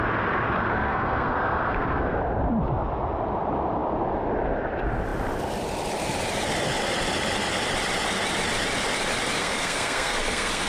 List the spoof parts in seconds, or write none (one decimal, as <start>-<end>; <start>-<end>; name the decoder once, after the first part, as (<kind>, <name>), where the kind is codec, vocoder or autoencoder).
0.7-2.2 (codec, SNAC); 9.4-10.7